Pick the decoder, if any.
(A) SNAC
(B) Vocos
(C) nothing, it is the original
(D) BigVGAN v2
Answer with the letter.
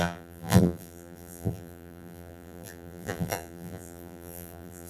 D